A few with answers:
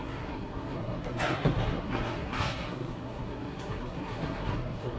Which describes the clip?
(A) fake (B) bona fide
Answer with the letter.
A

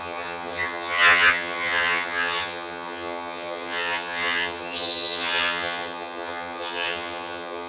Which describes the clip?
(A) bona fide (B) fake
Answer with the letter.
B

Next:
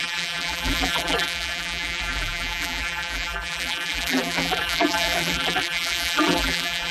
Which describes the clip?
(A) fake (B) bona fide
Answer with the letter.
A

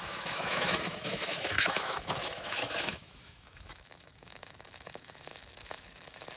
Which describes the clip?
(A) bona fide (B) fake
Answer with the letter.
B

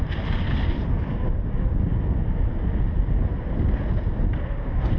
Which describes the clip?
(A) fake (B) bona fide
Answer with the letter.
B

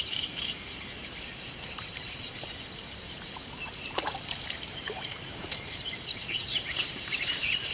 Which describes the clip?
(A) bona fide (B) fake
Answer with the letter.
B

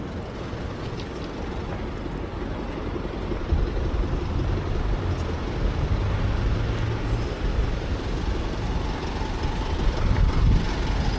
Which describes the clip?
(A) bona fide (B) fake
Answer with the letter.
A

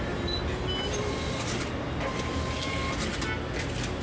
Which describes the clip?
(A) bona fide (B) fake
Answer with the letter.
A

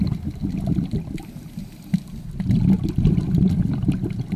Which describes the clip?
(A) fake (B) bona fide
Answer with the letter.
B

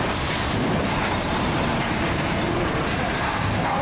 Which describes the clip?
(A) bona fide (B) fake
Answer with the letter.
B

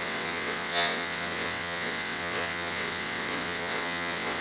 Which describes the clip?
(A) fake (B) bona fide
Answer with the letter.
A